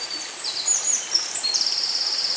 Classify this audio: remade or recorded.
recorded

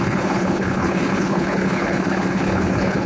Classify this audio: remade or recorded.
remade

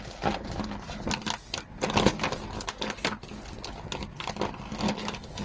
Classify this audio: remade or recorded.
recorded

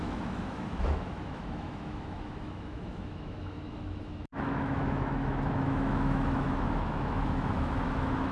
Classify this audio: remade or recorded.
remade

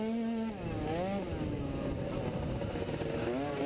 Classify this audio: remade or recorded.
recorded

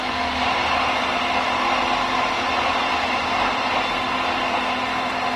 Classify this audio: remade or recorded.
recorded